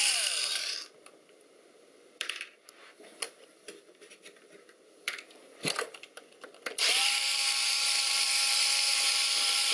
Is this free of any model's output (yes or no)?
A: no